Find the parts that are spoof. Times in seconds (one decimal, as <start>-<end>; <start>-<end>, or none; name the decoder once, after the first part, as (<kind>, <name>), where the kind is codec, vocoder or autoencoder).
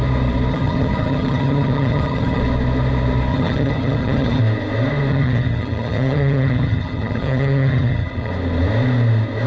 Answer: 0.5-2.4 (vocoder, HiFi-GAN); 3.3-4.4; 5.1-8.3